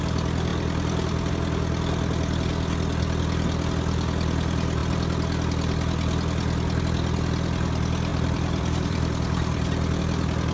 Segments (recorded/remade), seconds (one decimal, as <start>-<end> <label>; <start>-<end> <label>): 0.0-8.1 recorded; 8.1-10.0 remade; 10.0-10.5 recorded